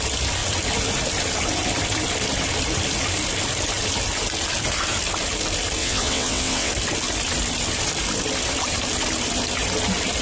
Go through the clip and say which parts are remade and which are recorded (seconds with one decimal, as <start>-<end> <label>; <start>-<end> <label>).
0.0-5.8 recorded; 5.8-6.7 remade; 6.7-10.2 recorded